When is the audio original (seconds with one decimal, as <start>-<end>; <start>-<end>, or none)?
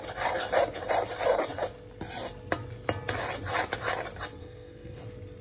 0.0-4.4; 5.0-5.4